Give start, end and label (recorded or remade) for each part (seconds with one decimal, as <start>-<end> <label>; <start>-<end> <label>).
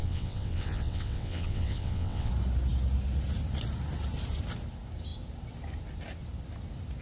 0.0-2.3 remade; 2.3-7.0 recorded